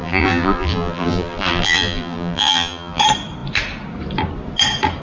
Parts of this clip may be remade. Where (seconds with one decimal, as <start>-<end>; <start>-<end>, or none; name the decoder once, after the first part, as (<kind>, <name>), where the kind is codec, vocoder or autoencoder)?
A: 0.0-3.0 (vocoder, BigVGAN v2)